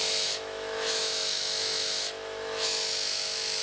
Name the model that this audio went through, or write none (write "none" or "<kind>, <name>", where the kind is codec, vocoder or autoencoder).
autoencoder, DAC-VAE